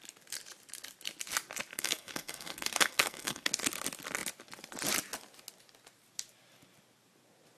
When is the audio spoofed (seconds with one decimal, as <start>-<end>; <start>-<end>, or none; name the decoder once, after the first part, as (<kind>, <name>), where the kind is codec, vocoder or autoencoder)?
1.7-3.5 (codec, SNAC)